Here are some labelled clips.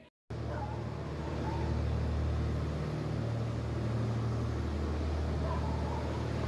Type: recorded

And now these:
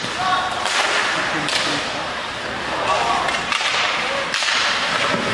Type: remade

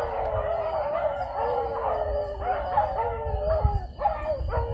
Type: recorded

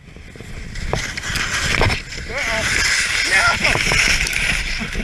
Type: recorded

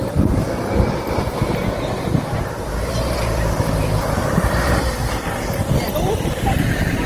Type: remade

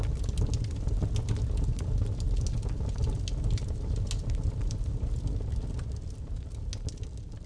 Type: recorded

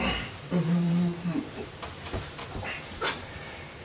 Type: remade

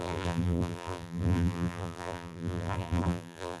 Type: remade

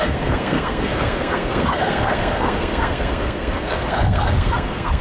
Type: remade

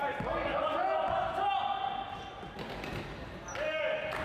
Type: recorded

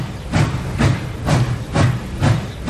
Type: recorded